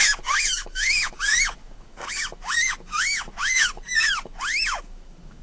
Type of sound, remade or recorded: remade